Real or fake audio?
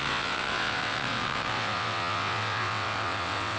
fake